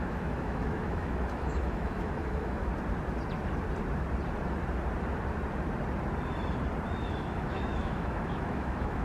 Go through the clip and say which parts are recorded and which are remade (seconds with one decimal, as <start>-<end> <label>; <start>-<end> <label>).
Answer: 0.0-2.7 remade; 2.7-7.0 recorded; 7.0-9.0 remade